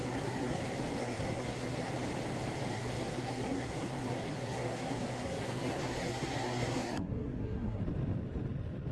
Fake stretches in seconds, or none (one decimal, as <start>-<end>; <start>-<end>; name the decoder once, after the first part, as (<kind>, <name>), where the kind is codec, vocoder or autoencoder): 0.0-0.6 (codec, SNAC); 1.0-1.9; 2.7-7.8